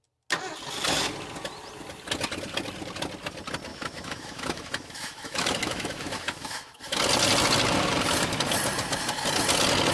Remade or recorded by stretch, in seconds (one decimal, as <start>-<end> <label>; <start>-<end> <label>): 0.0-3.7 recorded; 3.7-7.0 remade; 7.0-9.9 recorded